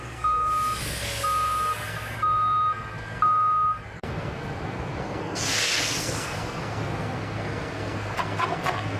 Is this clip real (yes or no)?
no